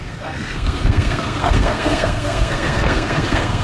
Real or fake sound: fake